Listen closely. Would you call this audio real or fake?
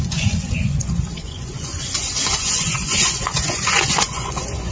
fake